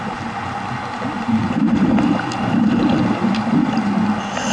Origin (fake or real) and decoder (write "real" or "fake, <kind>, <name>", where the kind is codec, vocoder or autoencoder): real